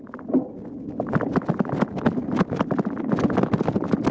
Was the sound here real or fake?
real